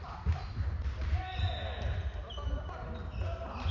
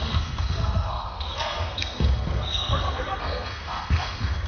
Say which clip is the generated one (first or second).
second